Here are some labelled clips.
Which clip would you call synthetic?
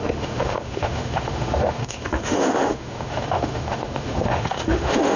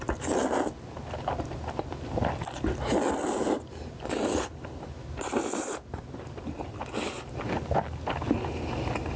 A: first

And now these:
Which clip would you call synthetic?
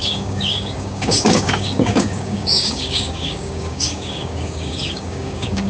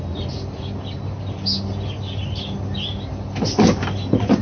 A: first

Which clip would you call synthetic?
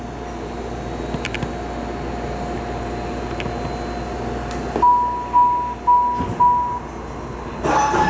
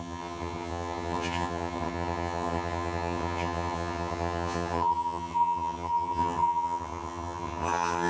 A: second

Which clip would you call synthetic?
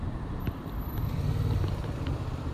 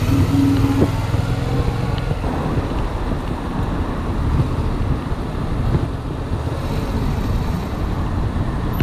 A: first